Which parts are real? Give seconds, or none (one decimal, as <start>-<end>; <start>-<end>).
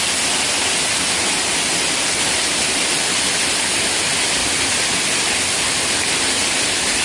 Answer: 0.0-7.0